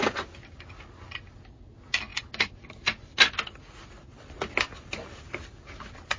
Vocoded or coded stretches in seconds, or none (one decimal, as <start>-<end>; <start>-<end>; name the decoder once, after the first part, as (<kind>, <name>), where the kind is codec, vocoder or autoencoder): none